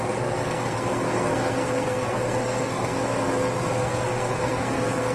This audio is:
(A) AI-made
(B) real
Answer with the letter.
A